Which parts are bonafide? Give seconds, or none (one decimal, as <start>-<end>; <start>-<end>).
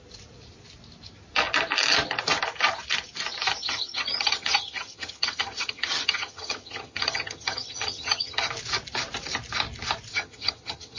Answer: 0.0-3.6; 8.5-10.1